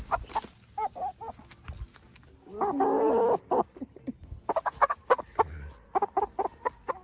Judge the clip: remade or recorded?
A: recorded